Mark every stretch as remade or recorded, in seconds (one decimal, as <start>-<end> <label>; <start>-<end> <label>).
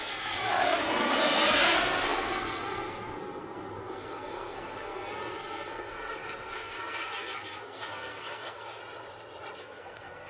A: 0.0-8.8 remade; 8.8-9.6 recorded; 9.6-10.3 remade